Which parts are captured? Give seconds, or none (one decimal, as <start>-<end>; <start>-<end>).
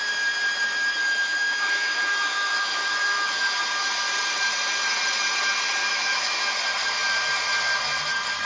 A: 0.0-1.0; 3.6-5.8; 6.4-8.5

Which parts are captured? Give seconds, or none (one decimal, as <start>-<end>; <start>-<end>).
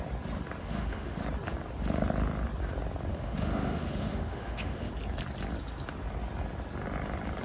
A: 0.0-0.6; 1.2-3.1; 4.9-7.4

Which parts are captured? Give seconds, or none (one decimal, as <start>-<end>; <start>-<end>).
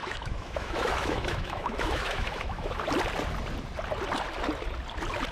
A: 2.8-5.3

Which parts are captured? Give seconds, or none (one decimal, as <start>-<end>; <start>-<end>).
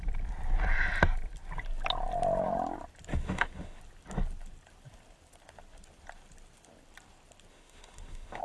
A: 0.0-3.1; 3.8-7.5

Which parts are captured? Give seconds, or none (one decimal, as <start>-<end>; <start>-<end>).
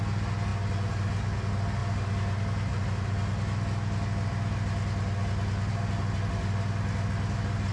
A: 0.0-7.7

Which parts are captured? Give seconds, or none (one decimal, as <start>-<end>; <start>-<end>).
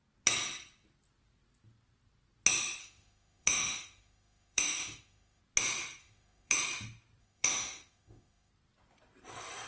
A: 0.0-2.8; 5.4-6.0; 6.6-7.2; 8.5-9.7